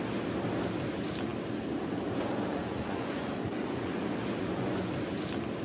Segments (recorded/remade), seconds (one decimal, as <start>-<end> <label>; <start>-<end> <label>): 0.0-2.5 recorded; 2.5-4.0 remade; 4.0-4.4 recorded; 4.4-4.9 remade; 4.9-5.6 recorded